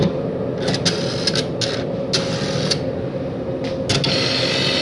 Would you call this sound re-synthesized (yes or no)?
no